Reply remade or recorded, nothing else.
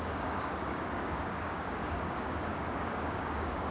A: remade